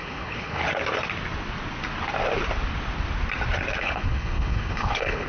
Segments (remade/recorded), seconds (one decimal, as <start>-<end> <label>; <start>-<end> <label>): 0.0-0.6 remade; 0.6-3.8 recorded; 3.8-5.3 remade